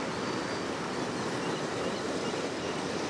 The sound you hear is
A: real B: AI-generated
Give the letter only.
A